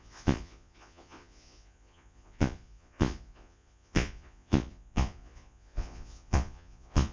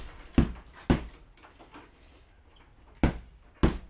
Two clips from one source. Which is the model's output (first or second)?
first